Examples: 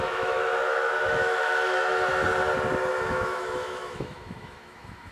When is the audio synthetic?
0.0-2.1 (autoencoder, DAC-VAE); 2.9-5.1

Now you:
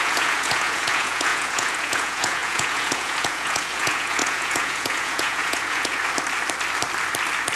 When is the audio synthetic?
0.0-6.0 (vocoder, Vocos)

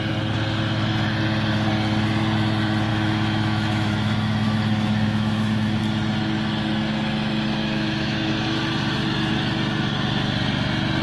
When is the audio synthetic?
2.9-5.8 (autoencoder, DAC-VAE); 7.6-8.3